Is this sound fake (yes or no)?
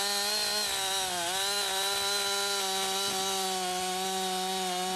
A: no